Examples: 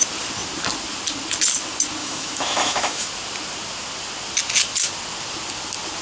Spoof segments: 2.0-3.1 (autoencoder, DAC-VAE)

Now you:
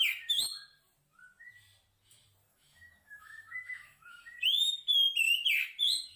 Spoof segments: 2.5-4.4 (autoencoder, DAC-VAE)

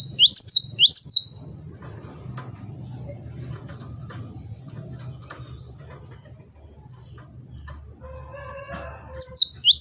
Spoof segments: none

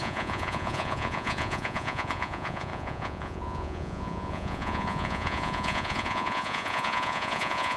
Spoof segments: 0.0-7.8 (vocoder, Vocos)

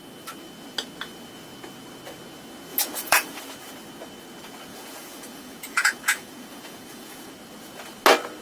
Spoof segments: 2.7-3.4 (vocoder, Vocos); 4.7-7.3

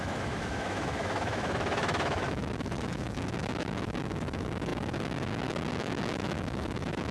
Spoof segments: 0.0-7.1 (autoencoder, DAC-VAE)

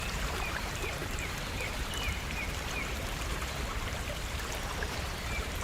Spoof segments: 0.0-5.6 (vocoder, BigVGAN v2)

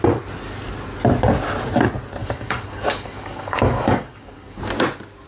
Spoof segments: 2.2-4.6 (codec, DAC)